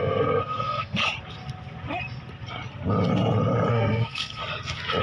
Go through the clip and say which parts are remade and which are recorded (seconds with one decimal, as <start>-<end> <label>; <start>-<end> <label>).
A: 0.0-1.0 remade; 1.0-3.7 recorded; 3.7-4.4 remade; 4.4-5.0 recorded